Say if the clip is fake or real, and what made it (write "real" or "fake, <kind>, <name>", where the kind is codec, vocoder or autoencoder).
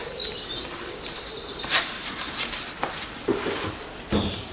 fake, vocoder, BigVGAN v2